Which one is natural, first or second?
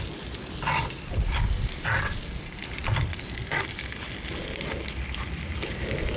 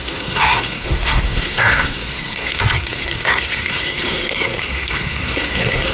first